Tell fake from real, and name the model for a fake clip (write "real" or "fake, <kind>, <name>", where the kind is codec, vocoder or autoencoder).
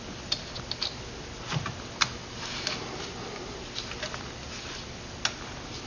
real